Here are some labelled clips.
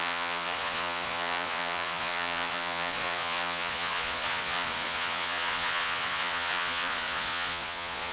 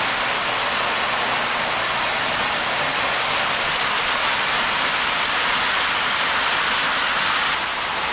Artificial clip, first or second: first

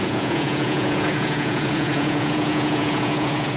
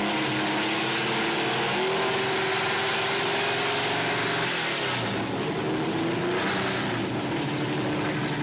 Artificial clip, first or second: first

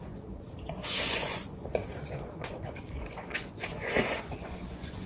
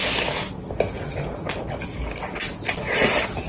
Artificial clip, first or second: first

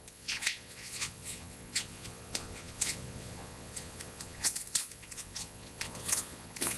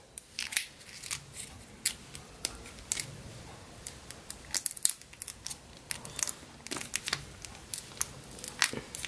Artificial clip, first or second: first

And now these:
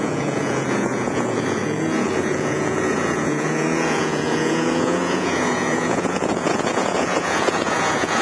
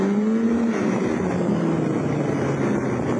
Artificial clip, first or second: first